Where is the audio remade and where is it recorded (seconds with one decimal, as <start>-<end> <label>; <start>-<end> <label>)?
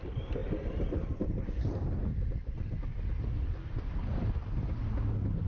0.0-2.1 recorded; 2.1-4.5 remade; 4.5-5.5 recorded